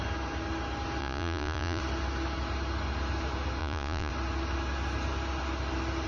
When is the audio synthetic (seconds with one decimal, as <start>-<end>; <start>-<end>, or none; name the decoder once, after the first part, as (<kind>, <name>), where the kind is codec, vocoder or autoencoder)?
1.0-1.8 (vocoder, Vocos); 3.6-4.1